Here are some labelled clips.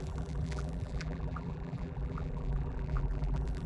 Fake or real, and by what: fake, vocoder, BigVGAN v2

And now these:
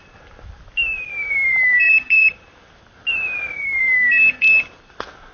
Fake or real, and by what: fake, vocoder, BigVGAN v2